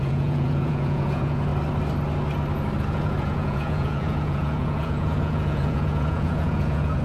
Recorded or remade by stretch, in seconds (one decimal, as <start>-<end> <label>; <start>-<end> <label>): 0.0-1.5 remade; 1.5-2.9 recorded; 2.9-7.0 remade